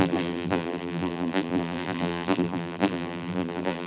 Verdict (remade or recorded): remade